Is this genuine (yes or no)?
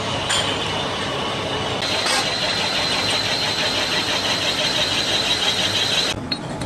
yes